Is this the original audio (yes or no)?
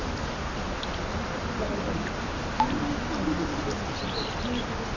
yes